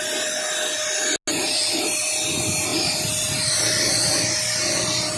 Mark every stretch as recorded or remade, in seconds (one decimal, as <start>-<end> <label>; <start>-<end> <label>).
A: 0.0-1.3 recorded; 1.3-2.0 remade; 2.0-5.2 recorded

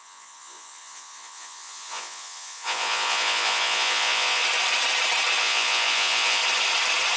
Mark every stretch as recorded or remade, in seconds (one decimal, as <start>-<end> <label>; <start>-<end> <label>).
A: 0.0-4.4 remade; 4.4-5.4 recorded; 5.4-6.4 remade; 6.4-7.2 recorded